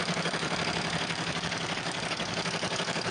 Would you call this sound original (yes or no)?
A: no